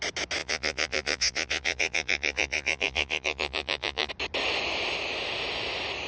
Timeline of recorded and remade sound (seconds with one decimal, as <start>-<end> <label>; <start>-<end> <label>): 0.0-0.4 recorded; 0.4-4.1 remade; 4.1-6.1 recorded